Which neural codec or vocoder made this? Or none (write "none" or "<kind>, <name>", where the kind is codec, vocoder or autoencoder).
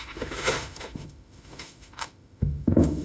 autoencoder, DAC-VAE